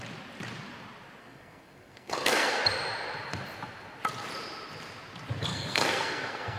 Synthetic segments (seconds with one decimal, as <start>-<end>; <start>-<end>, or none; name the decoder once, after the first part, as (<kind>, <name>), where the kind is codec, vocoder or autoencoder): 1.2-2.6 (codec, SNAC); 5.5-6.6